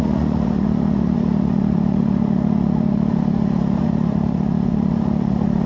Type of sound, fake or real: fake